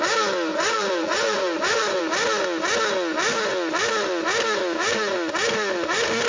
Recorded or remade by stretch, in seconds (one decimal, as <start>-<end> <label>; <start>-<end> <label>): 0.0-0.5 recorded; 0.5-2.0 remade; 2.0-6.3 recorded